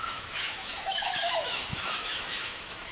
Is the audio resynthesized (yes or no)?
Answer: yes